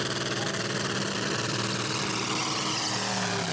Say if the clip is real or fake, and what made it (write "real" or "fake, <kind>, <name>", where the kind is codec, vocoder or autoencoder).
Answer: real